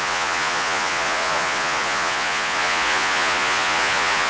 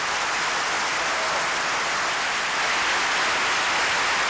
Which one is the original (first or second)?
second